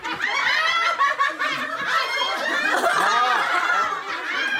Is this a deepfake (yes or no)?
no